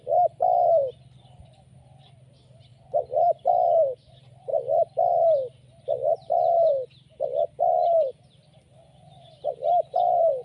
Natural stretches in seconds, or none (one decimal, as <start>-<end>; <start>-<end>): 0.0-2.7; 3.5-4.5; 5.1-10.4